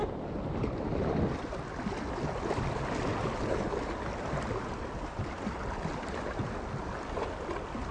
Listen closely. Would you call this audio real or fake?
real